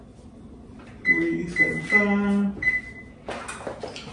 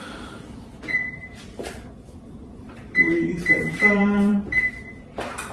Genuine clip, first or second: first